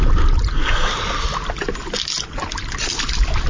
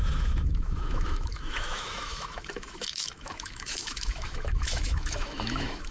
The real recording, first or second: first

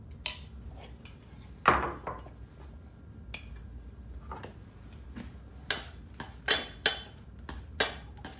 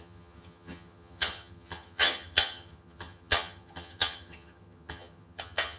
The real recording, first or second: first